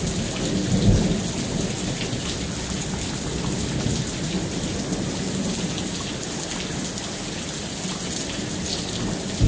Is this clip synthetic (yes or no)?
no